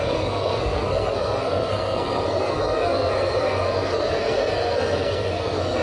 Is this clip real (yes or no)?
no